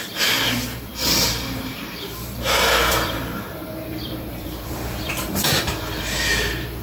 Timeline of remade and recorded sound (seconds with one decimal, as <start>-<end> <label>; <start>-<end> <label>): 0.0-6.8 remade